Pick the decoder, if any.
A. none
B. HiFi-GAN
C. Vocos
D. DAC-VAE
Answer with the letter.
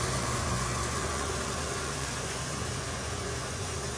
C